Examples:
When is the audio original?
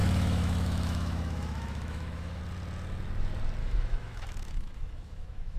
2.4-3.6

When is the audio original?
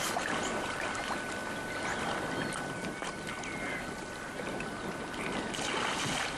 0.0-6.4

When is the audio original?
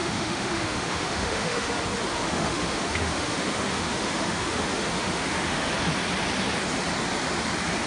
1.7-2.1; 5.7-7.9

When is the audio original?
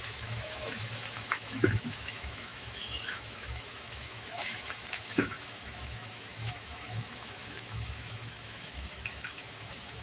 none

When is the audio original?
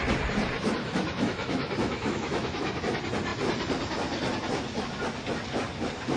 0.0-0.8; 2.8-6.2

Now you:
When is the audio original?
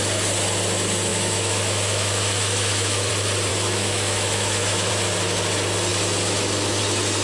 0.0-1.1; 3.1-3.5; 4.9-7.2